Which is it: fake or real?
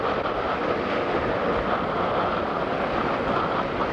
real